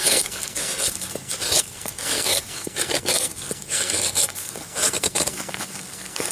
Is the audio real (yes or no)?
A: no